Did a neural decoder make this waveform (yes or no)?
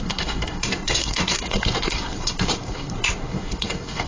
yes